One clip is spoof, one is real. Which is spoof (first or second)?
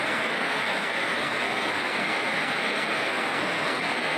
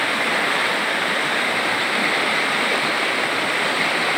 first